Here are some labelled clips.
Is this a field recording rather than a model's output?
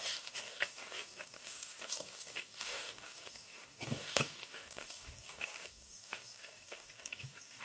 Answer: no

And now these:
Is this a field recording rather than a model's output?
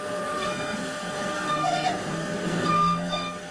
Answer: no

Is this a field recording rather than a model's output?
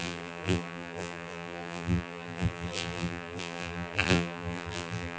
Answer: no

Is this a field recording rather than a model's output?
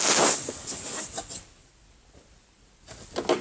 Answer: yes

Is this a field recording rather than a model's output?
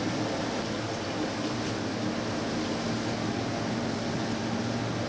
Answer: yes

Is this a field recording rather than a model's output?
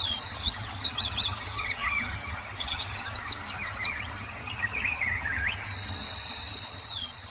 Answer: no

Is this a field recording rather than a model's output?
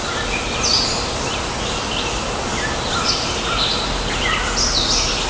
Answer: yes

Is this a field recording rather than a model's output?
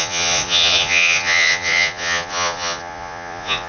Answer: no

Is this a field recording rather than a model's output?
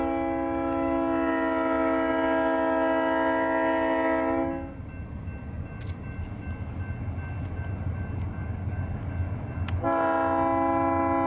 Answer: yes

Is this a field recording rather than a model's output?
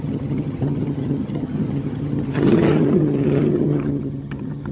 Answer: no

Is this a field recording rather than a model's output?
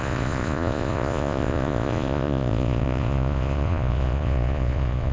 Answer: no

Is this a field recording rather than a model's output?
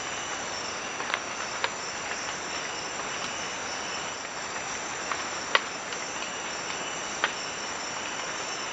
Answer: yes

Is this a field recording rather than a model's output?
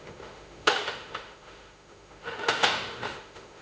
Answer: no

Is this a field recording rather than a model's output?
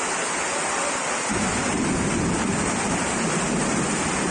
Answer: yes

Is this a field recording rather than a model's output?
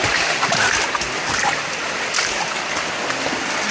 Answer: yes